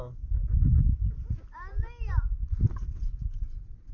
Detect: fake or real real